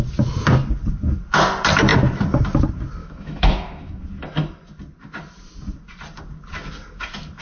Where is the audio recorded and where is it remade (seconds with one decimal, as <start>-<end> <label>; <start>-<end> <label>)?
0.0-3.0 recorded; 3.0-4.0 remade; 4.0-7.4 recorded

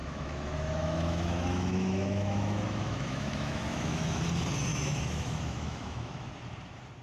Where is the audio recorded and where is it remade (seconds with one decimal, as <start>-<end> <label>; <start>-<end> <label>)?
0.0-4.2 remade; 4.2-4.7 recorded; 4.7-6.3 remade; 6.3-7.0 recorded

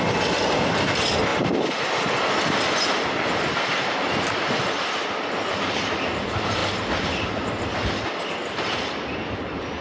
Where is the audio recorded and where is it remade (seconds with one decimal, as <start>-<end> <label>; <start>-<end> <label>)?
0.0-9.8 recorded